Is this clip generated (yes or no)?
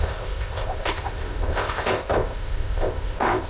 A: yes